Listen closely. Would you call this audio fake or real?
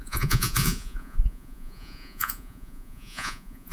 fake